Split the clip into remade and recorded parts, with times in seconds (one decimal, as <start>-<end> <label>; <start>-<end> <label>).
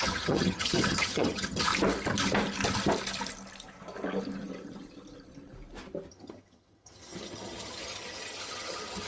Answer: 0.0-1.7 remade; 1.7-6.1 recorded; 6.1-9.1 remade